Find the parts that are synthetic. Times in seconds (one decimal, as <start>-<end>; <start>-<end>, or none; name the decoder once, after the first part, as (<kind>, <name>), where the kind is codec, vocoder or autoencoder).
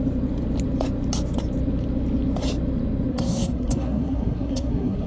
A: 3.1-5.1 (codec, SNAC)